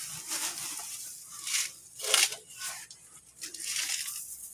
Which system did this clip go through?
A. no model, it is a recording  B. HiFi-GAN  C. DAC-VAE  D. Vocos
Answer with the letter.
A